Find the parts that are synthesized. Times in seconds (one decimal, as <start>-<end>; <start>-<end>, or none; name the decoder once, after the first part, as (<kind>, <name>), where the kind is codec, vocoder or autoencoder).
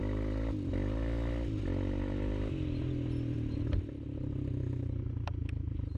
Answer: none